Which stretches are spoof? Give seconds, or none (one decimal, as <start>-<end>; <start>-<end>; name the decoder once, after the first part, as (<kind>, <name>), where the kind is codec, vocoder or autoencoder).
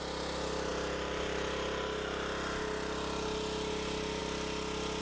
none